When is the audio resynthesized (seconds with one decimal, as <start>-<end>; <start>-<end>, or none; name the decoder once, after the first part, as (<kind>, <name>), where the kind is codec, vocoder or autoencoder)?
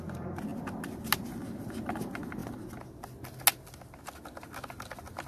none